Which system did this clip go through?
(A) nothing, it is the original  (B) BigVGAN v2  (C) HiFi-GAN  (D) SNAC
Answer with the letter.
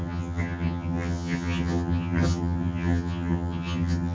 C